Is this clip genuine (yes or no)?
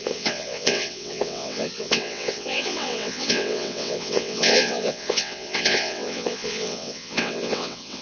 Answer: no